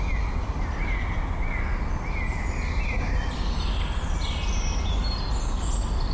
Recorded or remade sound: recorded